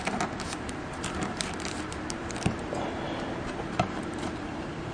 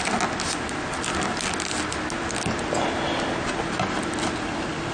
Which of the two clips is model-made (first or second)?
first